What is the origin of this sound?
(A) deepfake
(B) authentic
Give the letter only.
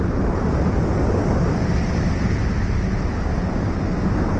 B